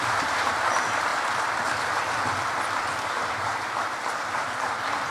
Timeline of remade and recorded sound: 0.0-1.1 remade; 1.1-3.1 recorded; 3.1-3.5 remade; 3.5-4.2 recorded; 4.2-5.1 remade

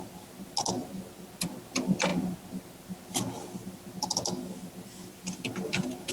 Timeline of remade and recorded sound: 0.0-6.1 recorded

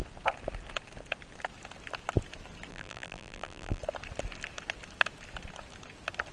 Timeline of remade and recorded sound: 0.0-2.7 recorded; 2.7-3.8 remade; 3.8-6.3 recorded

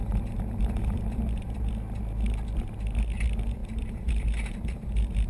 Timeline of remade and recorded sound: 0.0-1.7 remade; 1.7-3.6 recorded; 3.6-5.3 remade

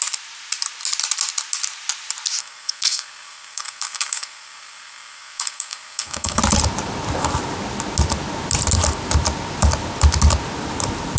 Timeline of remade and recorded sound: 0.0-2.4 recorded; 2.4-6.4 remade; 6.4-11.2 recorded